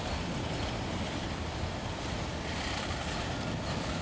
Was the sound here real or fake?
real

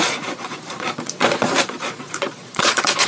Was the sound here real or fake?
fake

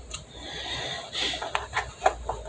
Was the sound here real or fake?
real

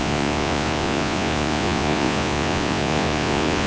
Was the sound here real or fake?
fake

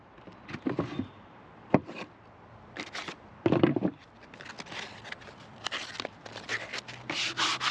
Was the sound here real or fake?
real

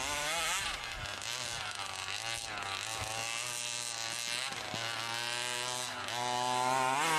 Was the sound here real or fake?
real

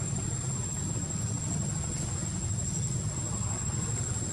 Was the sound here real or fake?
real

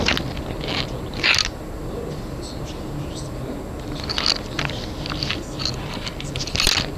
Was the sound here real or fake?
real